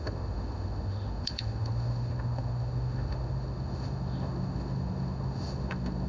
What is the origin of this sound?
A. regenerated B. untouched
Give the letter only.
A